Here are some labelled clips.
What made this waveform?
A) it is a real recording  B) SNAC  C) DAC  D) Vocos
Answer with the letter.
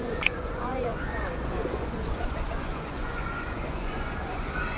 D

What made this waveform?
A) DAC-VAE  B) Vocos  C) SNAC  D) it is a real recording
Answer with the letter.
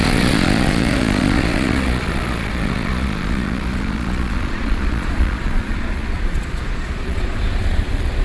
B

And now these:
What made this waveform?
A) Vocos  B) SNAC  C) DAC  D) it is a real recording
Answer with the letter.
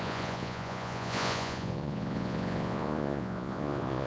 A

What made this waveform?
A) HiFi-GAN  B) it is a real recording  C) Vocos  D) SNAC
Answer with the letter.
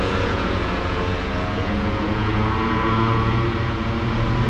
C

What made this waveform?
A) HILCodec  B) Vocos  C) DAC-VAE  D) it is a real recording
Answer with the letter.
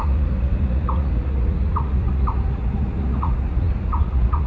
B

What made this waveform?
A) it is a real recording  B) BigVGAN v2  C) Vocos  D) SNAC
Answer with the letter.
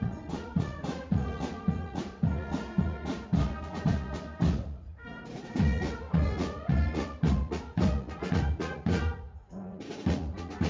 C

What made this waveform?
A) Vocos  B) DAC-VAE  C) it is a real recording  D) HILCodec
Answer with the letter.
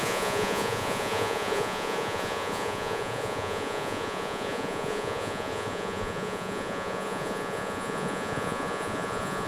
A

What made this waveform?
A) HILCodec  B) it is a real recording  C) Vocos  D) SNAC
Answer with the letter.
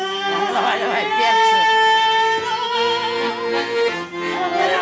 B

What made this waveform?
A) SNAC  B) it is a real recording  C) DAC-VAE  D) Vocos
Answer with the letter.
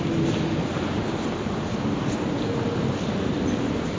B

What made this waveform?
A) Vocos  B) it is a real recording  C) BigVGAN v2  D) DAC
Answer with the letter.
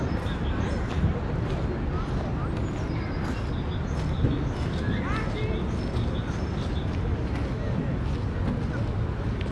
B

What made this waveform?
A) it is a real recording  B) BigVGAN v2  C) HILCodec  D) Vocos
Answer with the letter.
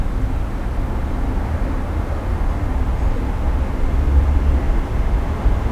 A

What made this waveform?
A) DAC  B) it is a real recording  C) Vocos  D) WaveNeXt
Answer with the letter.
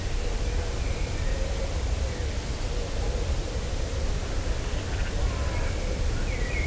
B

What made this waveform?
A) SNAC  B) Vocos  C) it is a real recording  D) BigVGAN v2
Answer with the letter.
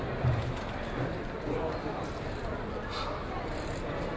C